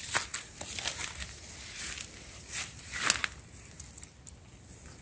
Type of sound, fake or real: real